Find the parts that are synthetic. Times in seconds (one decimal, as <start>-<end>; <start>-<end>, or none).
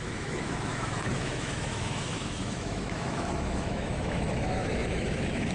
0.0-5.5